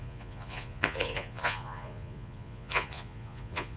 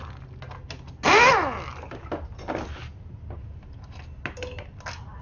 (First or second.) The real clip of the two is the second